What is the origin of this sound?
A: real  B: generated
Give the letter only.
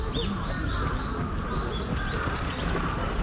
A